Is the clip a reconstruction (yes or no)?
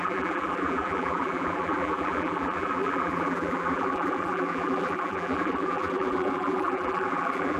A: yes